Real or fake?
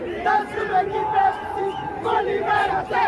fake